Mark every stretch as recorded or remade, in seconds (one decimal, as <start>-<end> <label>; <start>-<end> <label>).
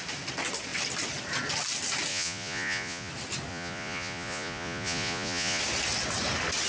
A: 0.0-2.1 recorded; 2.1-3.1 remade; 3.1-3.5 recorded; 3.5-5.6 remade; 5.6-6.7 recorded